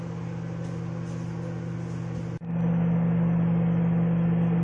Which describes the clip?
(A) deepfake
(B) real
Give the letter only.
B